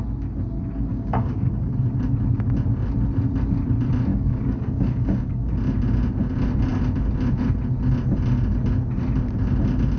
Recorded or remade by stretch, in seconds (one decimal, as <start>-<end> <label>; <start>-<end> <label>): 0.0-0.9 recorded; 0.9-1.7 remade; 1.7-4.1 recorded; 4.1-5.5 remade; 5.5-10.0 recorded